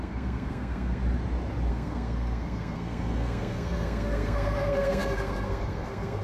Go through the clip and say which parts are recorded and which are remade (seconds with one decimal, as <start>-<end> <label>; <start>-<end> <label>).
0.0-1.0 remade; 1.0-1.7 recorded; 1.7-6.2 remade

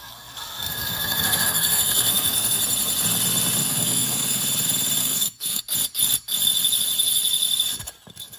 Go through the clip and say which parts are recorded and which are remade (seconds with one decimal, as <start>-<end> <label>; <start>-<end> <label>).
0.0-2.6 remade; 2.6-3.6 recorded; 3.6-4.4 remade; 4.4-5.0 recorded; 5.0-5.6 remade; 5.6-8.4 recorded

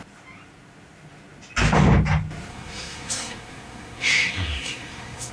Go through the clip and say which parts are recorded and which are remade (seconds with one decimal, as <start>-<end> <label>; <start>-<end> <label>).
0.0-2.5 recorded; 2.5-5.3 remade

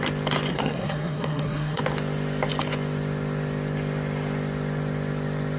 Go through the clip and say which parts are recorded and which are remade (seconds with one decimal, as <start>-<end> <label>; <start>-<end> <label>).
0.0-0.5 recorded; 0.5-1.8 remade; 1.8-5.6 recorded

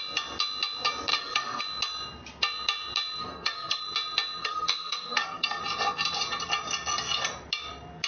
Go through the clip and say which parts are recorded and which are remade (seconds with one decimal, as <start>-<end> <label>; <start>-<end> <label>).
0.0-1.1 recorded; 1.1-1.6 remade; 1.6-3.2 recorded; 3.2-3.8 remade; 3.8-4.4 recorded; 4.4-5.6 remade; 5.6-8.1 recorded

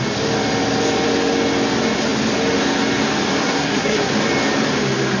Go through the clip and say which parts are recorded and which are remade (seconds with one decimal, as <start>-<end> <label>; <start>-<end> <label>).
0.0-3.4 recorded; 3.4-4.1 remade; 4.1-5.2 recorded

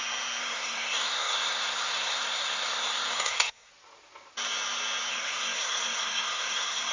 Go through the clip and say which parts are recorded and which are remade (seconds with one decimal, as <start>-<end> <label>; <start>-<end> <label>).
0.0-0.4 recorded; 0.4-3.7 remade; 3.7-5.1 recorded; 5.1-6.9 remade

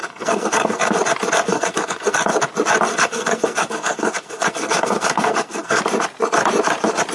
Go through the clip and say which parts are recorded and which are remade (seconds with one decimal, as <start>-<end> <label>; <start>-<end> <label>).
0.0-0.9 remade; 0.9-1.5 recorded; 1.5-2.3 remade; 2.3-2.9 recorded; 2.9-5.8 remade; 5.8-7.1 recorded